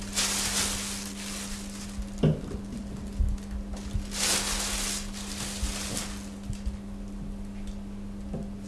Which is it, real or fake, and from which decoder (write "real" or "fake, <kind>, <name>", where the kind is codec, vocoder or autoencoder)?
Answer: real